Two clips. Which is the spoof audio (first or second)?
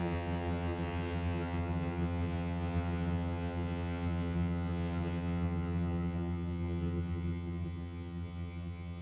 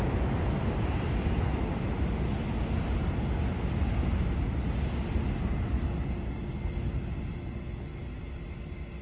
first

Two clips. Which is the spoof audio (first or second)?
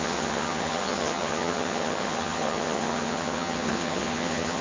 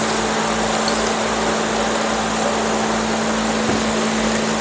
first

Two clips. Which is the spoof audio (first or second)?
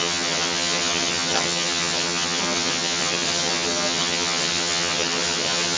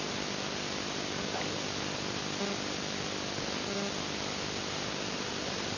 first